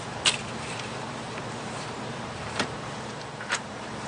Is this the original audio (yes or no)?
no